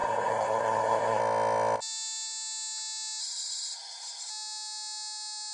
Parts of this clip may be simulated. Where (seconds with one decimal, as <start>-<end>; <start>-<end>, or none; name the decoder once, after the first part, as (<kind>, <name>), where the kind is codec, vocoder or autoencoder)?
0.0-1.2 (codec, SNAC); 3.2-4.3